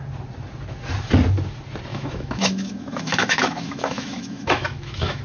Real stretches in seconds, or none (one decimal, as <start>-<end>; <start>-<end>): 0.0-1.9